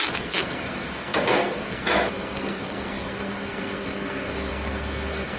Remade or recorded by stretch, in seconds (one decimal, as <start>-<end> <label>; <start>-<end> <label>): 0.0-5.4 remade